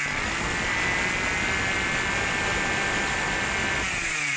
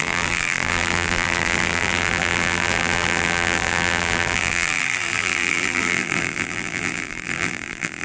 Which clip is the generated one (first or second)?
second